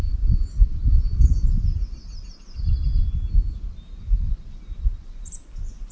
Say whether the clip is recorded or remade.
recorded